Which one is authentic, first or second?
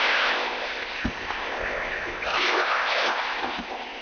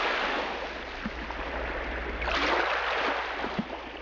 second